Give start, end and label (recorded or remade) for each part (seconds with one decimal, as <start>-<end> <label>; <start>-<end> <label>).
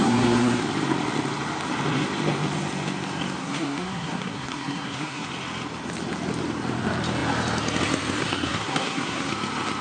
0.0-0.6 remade; 0.6-3.4 recorded; 3.4-5.3 remade; 5.3-8.2 recorded; 8.2-9.3 remade; 9.3-9.8 recorded